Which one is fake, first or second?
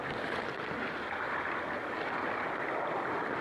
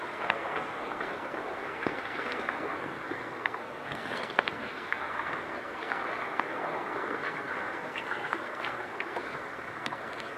second